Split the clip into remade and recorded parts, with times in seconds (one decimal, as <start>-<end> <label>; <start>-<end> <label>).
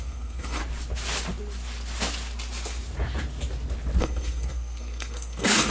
0.0-0.6 remade; 0.6-4.0 recorded; 4.0-5.7 remade